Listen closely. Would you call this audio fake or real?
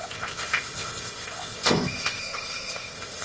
fake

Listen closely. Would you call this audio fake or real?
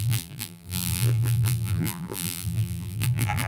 fake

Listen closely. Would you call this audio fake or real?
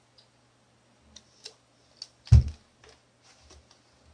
real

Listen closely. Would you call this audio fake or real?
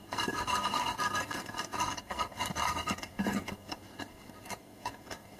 fake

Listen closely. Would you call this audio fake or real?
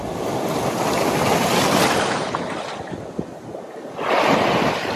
real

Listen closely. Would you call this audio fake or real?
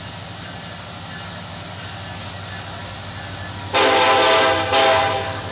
real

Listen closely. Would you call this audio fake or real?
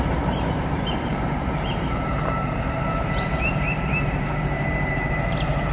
fake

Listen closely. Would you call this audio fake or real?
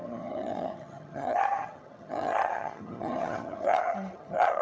fake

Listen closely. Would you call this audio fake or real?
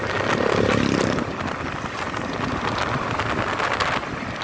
real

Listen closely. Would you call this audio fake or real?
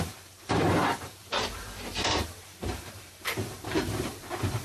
fake